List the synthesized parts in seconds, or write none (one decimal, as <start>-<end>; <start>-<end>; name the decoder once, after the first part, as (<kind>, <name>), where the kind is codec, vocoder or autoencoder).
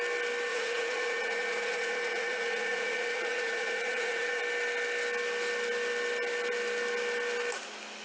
0.5-4.4 (vocoder, Vocos)